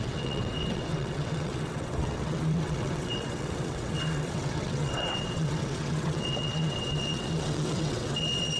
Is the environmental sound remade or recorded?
remade